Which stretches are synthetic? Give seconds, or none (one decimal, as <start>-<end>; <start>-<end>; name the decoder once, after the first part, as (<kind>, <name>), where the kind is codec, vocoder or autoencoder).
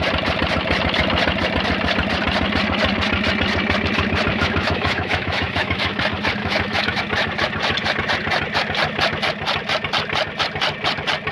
4.3-6.0 (autoencoder, DAC-VAE); 6.4-7.0